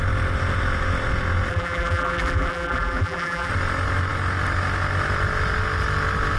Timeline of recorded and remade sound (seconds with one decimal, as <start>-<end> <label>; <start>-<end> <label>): 0.0-1.5 recorded; 1.5-3.5 remade; 3.5-6.4 recorded